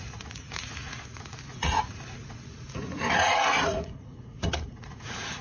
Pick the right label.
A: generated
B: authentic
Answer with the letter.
A